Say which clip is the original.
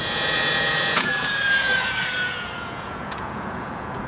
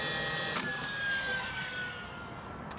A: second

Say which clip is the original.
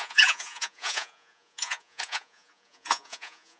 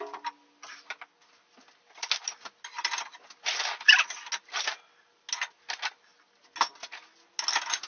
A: second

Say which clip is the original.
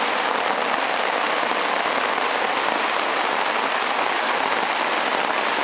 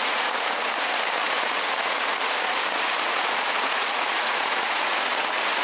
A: first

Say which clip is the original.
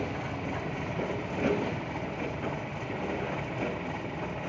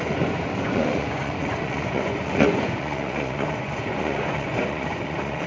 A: first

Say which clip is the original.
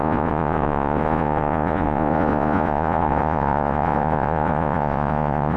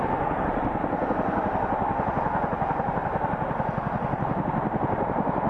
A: second